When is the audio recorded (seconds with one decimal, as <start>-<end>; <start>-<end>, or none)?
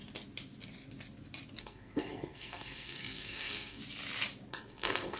0.0-1.6; 3.8-4.5